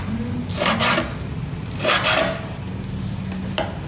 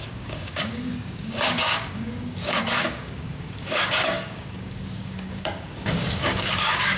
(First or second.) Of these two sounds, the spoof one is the second